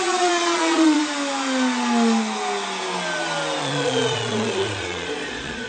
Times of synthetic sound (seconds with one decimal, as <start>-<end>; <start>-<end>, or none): 0.0-1.0; 3.6-5.7